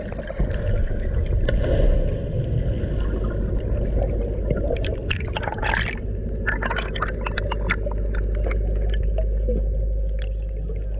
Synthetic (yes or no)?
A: no